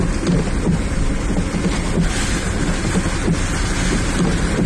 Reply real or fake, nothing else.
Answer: real